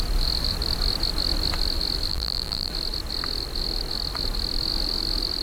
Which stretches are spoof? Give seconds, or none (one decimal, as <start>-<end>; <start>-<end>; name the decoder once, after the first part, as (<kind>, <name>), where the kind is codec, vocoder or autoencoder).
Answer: 2.1-2.7 (vocoder, BigVGAN v2)